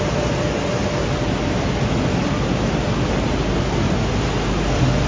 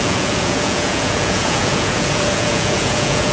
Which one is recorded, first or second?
first